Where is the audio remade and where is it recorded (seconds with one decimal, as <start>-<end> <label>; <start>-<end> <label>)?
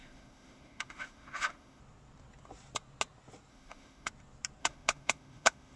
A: 0.0-1.8 remade; 1.8-3.5 recorded; 3.5-4.1 remade; 4.1-4.6 recorded; 4.6-5.8 remade